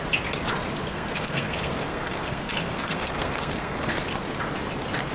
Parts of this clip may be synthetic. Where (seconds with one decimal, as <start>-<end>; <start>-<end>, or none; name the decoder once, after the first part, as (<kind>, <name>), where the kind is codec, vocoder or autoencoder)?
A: 0.9-4.0 (codec, SNAC)